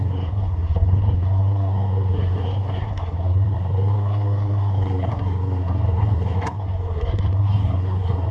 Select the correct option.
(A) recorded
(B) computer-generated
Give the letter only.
B